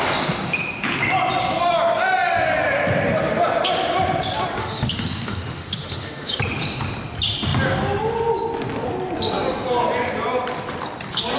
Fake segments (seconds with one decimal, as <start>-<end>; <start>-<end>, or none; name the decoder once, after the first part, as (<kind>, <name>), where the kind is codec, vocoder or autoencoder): 4.6-6.4 (autoencoder, DAC-VAE)